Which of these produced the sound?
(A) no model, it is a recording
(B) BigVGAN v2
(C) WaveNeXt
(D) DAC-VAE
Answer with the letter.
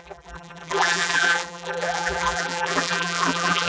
B